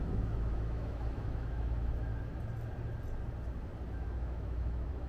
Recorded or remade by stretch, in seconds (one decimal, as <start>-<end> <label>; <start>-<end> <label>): 0.0-2.1 remade; 2.1-3.9 recorded; 3.9-5.1 remade